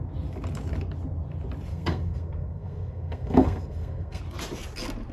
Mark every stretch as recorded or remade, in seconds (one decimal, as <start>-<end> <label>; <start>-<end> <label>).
0.0-1.7 recorded; 1.7-4.2 remade; 4.2-5.1 recorded